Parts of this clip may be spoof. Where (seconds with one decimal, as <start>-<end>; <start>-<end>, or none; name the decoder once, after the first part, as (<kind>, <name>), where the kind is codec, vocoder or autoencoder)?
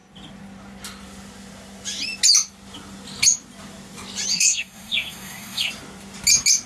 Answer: 4.3-5.7 (codec, SNAC)